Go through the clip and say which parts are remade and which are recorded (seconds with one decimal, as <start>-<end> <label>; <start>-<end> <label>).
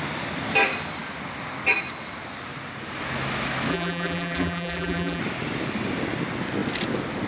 0.0-3.7 recorded; 3.7-5.2 remade; 5.2-7.3 recorded